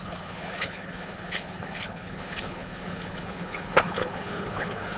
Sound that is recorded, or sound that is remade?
remade